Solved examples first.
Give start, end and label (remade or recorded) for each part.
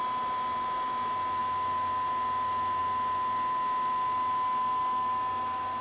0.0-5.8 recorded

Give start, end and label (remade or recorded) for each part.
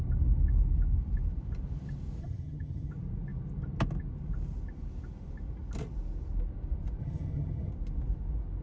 0.0-2.2 recorded; 2.2-2.9 remade; 2.9-7.0 recorded; 7.0-7.7 remade; 7.7-8.6 recorded